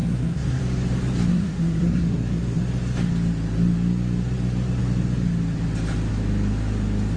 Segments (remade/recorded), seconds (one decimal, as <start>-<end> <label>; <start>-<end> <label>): 0.0-0.6 remade; 0.6-1.3 recorded; 1.3-2.6 remade; 2.6-7.2 recorded